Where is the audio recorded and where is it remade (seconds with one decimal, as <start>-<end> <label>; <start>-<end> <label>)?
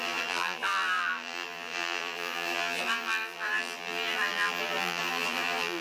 0.0-5.8 remade